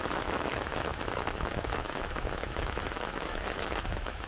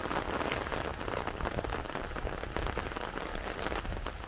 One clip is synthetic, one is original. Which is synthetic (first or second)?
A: first